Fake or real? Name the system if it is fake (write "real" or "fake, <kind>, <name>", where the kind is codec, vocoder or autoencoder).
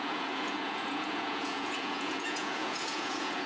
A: fake, vocoder, Vocos